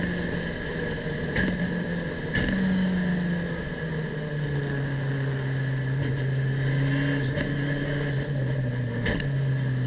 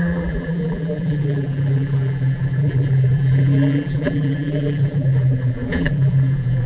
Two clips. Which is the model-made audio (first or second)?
second